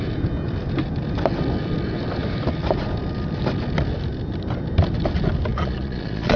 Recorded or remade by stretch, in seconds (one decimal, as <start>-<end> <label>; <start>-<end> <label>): 0.0-5.5 recorded; 5.5-6.4 remade